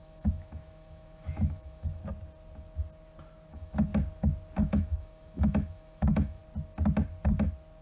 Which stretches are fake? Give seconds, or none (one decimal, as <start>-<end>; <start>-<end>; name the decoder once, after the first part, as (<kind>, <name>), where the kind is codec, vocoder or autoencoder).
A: 0.0-2.0 (autoencoder, DAC-VAE); 3.5-3.9; 4.6-6.4

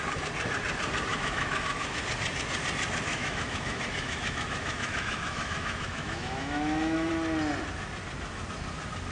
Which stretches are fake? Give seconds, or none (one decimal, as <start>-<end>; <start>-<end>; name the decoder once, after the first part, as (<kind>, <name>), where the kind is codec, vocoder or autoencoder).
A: 1.1-2.0 (autoencoder, DAC-VAE); 3.1-7.1

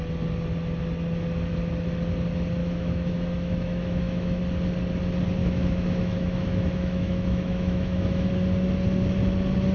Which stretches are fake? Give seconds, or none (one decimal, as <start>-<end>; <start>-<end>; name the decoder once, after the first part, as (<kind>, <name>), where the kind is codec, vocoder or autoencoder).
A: 2.6-4.4 (autoencoder, DAC-VAE); 5.4-8.3

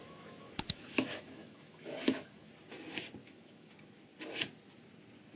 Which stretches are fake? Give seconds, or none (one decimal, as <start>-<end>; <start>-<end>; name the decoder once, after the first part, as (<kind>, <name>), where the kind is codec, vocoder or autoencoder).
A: 0.0-2.5 (autoencoder, DAC-VAE); 3.2-3.7

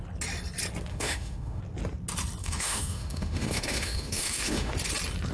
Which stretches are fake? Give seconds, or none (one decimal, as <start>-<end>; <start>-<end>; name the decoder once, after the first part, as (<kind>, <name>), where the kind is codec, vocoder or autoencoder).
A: 0.9-1.6 (autoencoder, DAC-VAE); 2.4-4.7

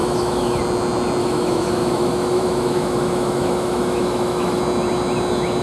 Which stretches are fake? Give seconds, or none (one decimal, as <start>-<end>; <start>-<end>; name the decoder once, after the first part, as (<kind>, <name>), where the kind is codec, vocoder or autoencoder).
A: 0.0-0.6 (autoencoder, DAC-VAE); 1.2-4.6

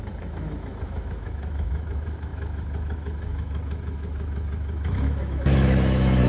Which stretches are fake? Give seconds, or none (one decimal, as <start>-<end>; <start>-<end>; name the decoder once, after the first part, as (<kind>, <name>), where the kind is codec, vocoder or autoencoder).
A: 0.0-6.3 (autoencoder, DAC-VAE)